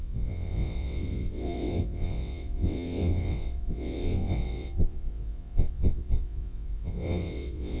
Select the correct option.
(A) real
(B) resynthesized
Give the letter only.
B